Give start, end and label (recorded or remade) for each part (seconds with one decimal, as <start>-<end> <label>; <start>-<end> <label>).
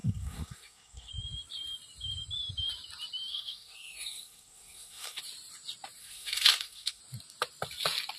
0.0-1.1 remade; 1.1-3.3 recorded; 3.3-5.2 remade; 5.2-6.0 recorded; 6.0-7.0 remade; 7.0-8.2 recorded